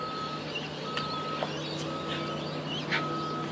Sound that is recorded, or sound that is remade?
recorded